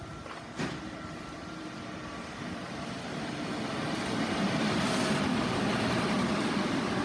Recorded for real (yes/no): no